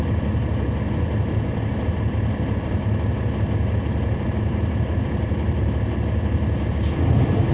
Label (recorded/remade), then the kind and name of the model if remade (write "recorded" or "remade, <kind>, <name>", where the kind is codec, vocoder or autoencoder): recorded